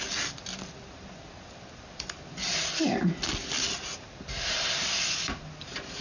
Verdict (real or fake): real